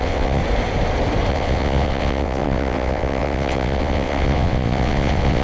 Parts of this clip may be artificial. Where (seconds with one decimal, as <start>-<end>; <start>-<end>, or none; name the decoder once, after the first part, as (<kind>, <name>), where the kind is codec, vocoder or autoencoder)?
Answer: 0.0-0.4 (vocoder, WaveNeXt); 1.3-5.4